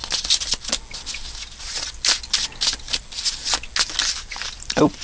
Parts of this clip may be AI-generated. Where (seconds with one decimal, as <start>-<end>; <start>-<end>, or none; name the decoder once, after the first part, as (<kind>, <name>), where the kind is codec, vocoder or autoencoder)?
3.0-3.4 (vocoder, BigVGAN v2); 4.0-5.0